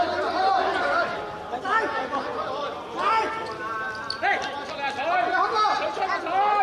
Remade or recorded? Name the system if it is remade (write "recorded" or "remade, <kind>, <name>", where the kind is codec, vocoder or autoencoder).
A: recorded